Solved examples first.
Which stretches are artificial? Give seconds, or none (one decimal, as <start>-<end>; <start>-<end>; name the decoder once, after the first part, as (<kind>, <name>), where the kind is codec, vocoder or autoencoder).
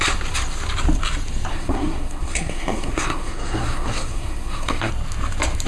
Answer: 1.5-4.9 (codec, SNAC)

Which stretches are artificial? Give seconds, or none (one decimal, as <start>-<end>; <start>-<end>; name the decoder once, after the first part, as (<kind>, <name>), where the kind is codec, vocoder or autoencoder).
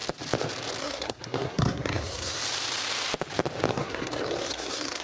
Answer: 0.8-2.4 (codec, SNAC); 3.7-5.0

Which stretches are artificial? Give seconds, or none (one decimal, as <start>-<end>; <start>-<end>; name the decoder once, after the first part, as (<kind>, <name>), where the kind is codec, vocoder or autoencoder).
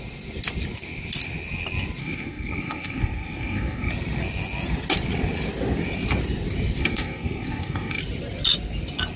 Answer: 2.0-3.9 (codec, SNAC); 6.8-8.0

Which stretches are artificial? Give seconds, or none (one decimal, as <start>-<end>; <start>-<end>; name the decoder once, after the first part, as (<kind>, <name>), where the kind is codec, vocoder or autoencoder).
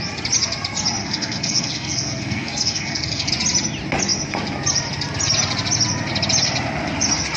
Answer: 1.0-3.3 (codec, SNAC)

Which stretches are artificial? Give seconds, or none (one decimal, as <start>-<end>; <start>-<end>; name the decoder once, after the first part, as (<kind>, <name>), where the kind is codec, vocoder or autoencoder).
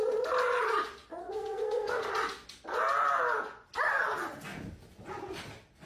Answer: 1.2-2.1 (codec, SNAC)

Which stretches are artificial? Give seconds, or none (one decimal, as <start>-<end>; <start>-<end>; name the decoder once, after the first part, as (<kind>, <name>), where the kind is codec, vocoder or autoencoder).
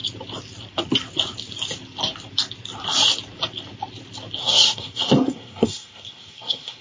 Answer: 4.4-6.8 (codec, SNAC)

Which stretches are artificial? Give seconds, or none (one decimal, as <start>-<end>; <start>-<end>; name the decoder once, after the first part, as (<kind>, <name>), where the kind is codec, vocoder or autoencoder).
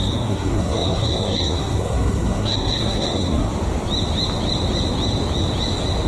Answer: 0.0-3.5 (codec, SNAC)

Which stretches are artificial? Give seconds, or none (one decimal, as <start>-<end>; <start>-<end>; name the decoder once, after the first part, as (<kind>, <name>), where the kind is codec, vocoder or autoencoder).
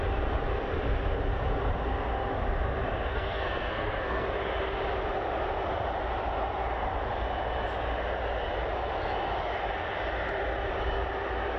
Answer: 3.1-4.3 (codec, SNAC)